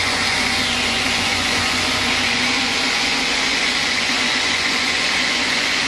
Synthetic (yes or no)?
yes